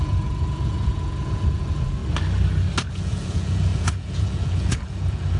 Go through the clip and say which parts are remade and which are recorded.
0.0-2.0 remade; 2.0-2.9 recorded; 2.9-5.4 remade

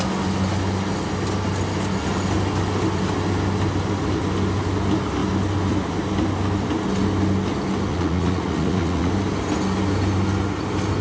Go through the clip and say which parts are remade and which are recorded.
0.0-7.9 recorded; 7.9-9.1 remade; 9.1-11.0 recorded

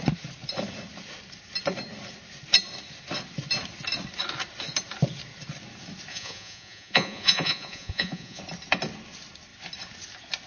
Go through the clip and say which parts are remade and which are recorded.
0.0-6.1 recorded; 6.1-8.4 remade; 8.4-10.5 recorded

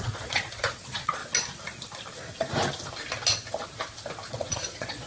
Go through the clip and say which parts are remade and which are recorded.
0.0-1.2 remade; 1.2-4.3 recorded; 4.3-5.1 remade

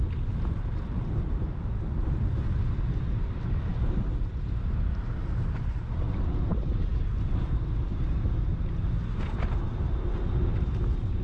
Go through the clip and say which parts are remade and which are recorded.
0.0-11.2 recorded